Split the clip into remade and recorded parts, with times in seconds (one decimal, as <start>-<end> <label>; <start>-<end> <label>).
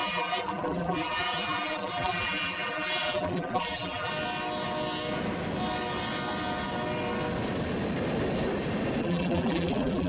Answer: 0.0-4.1 remade; 4.1-9.0 recorded; 9.0-10.1 remade